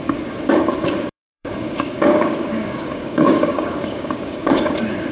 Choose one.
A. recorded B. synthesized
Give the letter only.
B